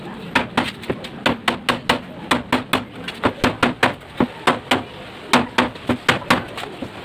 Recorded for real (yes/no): yes